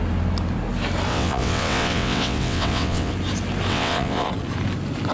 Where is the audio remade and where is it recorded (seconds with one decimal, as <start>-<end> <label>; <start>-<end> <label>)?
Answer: 0.0-1.1 recorded; 1.1-3.1 remade; 3.1-3.7 recorded; 3.7-4.3 remade; 4.3-5.1 recorded